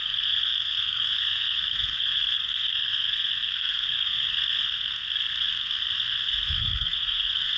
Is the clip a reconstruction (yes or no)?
yes